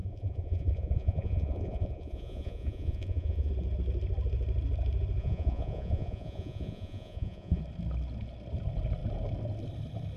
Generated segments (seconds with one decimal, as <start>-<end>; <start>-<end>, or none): 0.0-3.5; 5.2-7.6